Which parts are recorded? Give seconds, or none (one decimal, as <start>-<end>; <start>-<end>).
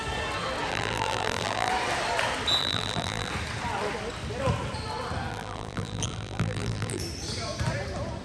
0.0-0.7; 1.7-2.6; 3.3-5.3; 7.0-8.2